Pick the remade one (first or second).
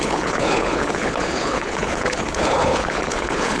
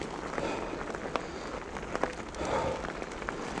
first